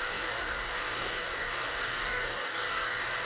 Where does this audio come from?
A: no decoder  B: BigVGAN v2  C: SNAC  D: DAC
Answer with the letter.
D